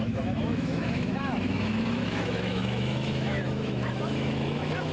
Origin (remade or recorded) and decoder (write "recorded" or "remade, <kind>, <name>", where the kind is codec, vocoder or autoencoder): remade, autoencoder, DAC-VAE